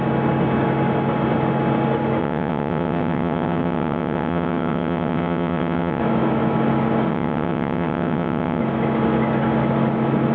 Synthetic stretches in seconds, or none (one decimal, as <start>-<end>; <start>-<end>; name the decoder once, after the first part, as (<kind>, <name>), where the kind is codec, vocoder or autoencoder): 2.2-6.0 (vocoder, WaveNeXt); 7.1-8.6